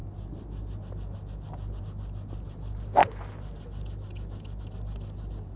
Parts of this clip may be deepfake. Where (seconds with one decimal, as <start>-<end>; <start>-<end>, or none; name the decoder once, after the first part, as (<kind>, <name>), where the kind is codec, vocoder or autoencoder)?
none